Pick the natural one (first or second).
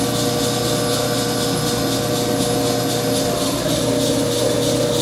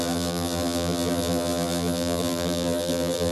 first